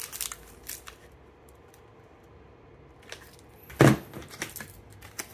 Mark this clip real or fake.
real